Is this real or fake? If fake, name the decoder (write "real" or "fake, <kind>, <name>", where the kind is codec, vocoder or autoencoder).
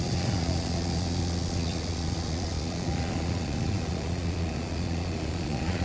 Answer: fake, vocoder, Vocos